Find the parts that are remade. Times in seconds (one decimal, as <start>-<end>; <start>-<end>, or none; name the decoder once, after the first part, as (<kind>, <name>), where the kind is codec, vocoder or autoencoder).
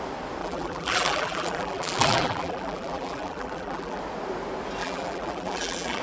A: 0.4-4.0 (vocoder, BigVGAN v2); 4.8-6.0